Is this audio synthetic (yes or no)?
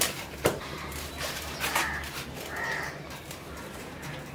yes